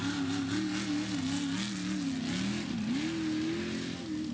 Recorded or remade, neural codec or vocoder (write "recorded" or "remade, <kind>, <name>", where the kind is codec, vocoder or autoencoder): recorded